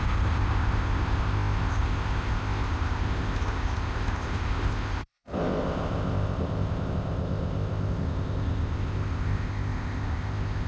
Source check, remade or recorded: remade